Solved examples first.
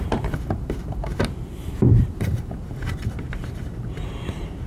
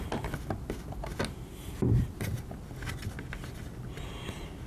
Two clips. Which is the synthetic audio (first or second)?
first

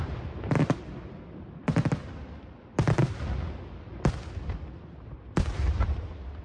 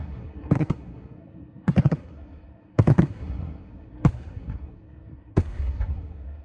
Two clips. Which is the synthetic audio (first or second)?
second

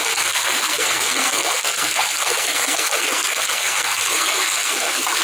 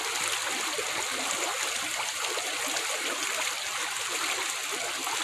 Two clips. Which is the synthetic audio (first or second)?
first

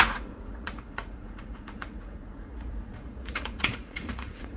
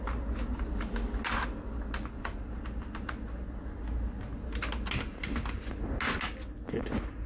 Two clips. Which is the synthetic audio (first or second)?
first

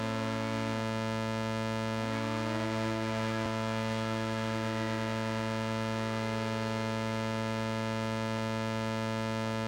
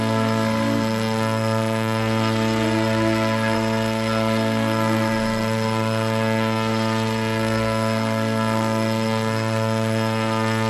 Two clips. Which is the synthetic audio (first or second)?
second